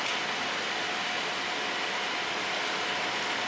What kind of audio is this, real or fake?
real